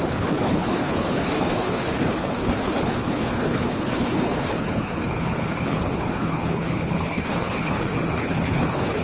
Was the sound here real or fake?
fake